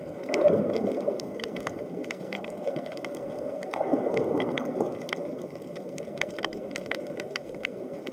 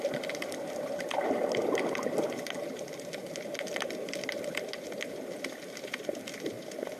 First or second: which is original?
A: second